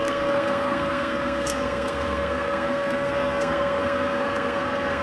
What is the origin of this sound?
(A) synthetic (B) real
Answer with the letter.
A